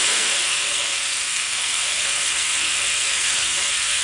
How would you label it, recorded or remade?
remade